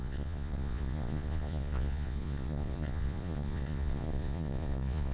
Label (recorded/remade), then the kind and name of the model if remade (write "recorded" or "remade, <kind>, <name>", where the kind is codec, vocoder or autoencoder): remade, vocoder, Vocos